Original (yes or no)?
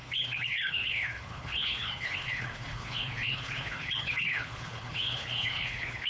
no